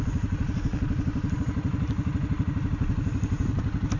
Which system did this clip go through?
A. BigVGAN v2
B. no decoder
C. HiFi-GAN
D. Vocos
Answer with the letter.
B